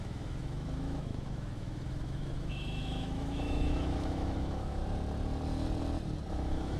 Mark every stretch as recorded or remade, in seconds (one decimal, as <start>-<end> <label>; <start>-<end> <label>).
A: 0.0-4.8 remade; 4.8-6.3 recorded; 6.3-6.8 remade